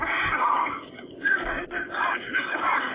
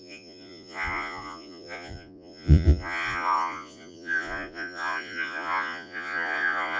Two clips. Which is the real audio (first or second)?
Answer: first